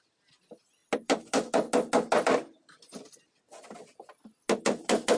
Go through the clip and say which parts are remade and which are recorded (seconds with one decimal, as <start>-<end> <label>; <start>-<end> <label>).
0.0-5.2 recorded